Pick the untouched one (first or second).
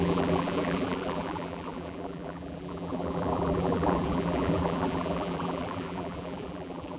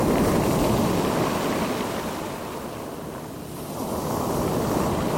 second